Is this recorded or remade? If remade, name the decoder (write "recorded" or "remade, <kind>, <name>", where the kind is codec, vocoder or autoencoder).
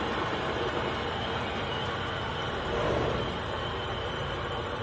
remade, vocoder, BigVGAN v2